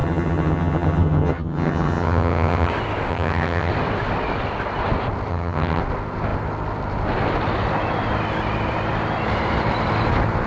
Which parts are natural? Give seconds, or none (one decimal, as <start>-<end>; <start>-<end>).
2.7-3.1; 3.7-5.3; 5.8-10.5